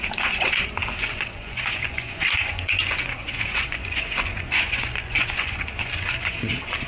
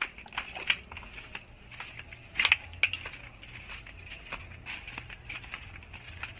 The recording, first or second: second